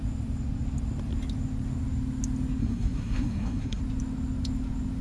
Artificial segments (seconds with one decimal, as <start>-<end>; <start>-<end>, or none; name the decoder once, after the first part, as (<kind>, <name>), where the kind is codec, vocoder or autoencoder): 2.6-3.8 (codec, SNAC)